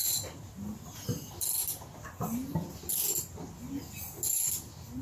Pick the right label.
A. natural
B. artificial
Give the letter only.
A